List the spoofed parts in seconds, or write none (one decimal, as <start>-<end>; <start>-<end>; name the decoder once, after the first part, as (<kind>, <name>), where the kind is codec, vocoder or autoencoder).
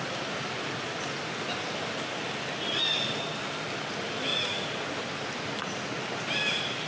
4.3-4.8 (vocoder, Vocos)